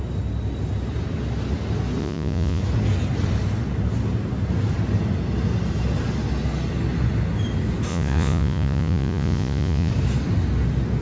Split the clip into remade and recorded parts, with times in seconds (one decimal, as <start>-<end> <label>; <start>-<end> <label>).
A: 0.0-2.0 recorded; 2.0-2.6 remade; 2.6-7.9 recorded; 7.9-9.9 remade; 9.9-11.0 recorded